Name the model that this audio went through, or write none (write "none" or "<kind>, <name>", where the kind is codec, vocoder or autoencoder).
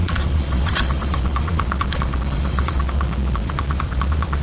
vocoder, Vocos